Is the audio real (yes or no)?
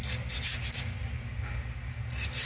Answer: yes